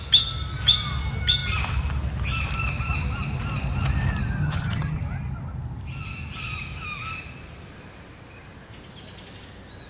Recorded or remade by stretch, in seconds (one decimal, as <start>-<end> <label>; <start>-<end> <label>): 0.0-4.4 recorded; 4.4-5.0 remade; 5.0-9.9 recorded